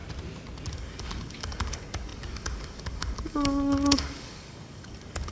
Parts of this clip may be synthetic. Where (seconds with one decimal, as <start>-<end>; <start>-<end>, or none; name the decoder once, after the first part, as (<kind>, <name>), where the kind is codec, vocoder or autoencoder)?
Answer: 0.7-5.3 (codec, DAC)